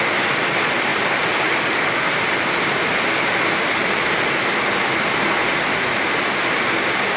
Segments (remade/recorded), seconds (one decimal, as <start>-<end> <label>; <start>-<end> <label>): 0.0-7.2 recorded